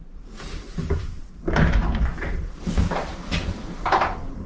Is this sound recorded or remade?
remade